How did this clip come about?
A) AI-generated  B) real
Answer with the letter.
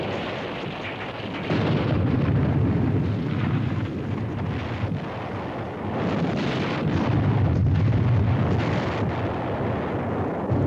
B